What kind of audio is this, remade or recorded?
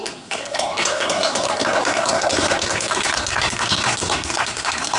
remade